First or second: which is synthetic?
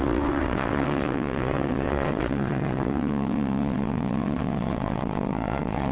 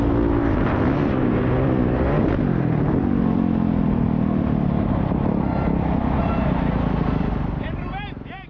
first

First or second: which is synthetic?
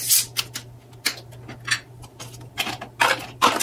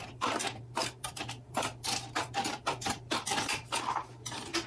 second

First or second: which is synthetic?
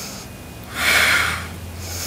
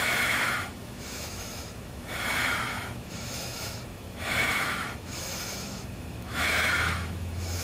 second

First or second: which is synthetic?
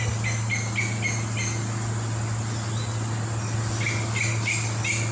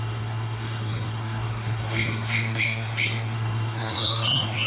second